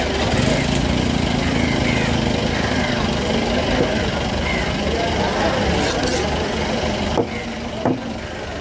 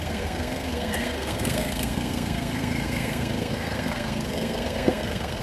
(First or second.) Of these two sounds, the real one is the first